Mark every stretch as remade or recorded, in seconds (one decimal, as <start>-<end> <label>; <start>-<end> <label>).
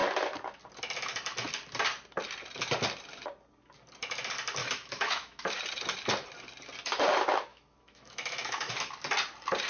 0.0-4.6 recorded; 4.6-5.6 remade; 5.6-7.5 recorded; 7.5-8.7 remade; 8.7-9.7 recorded